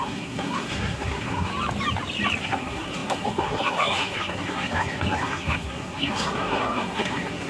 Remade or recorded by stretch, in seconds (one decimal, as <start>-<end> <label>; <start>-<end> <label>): 0.0-1.5 remade; 1.5-2.4 recorded; 2.4-7.5 remade